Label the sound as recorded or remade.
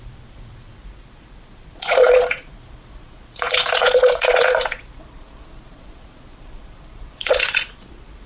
remade